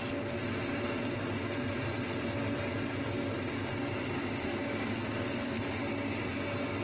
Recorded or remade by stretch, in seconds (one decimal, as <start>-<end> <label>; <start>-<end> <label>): 0.0-4.5 recorded; 4.5-5.6 remade; 5.6-6.8 recorded